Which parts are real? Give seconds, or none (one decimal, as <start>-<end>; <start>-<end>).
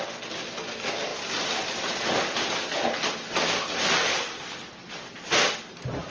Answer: 0.0-6.1